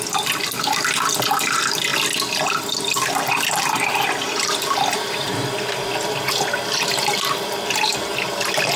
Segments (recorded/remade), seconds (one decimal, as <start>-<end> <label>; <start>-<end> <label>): 0.0-8.8 recorded